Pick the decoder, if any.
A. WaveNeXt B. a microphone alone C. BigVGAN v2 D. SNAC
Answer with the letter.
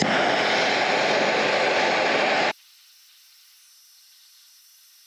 B